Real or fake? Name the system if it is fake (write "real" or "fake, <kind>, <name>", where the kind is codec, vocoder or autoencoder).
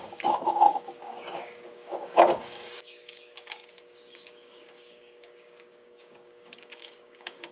fake, codec, DAC